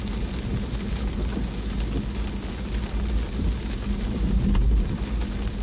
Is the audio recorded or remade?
recorded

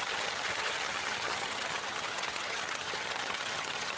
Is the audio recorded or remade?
remade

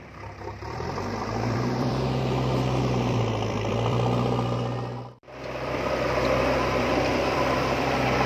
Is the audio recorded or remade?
remade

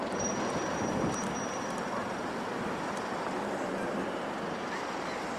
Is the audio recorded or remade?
recorded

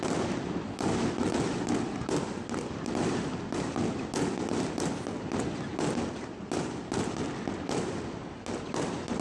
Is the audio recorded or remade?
recorded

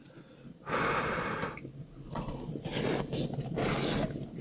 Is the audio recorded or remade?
recorded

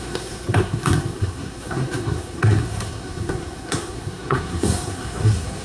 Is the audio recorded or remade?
remade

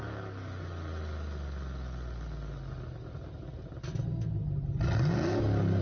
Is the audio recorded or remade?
recorded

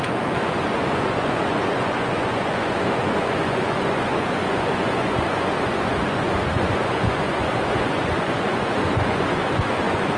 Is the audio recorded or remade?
remade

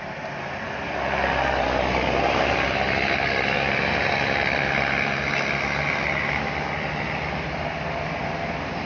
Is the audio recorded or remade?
recorded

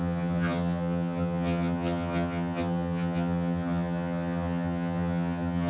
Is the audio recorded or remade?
remade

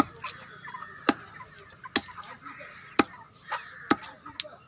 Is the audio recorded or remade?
recorded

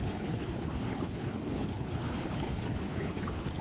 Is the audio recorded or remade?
remade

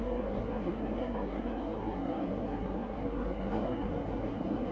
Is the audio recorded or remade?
remade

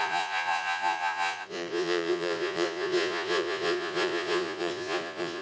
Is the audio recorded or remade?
remade